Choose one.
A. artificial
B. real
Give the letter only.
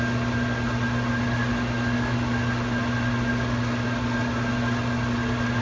B